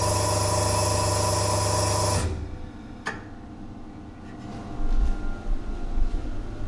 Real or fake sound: real